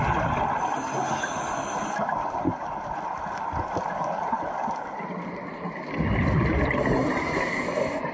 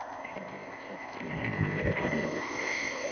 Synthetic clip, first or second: second